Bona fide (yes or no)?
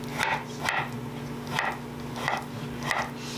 yes